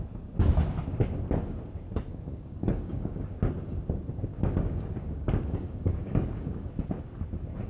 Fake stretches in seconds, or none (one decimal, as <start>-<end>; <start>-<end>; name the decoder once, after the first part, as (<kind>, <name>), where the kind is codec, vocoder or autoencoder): 2.1-3.3 (codec, DAC); 4.3-6.7